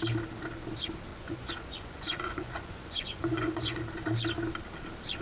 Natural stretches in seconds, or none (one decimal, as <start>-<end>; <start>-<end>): 0.0-1.1; 3.8-5.2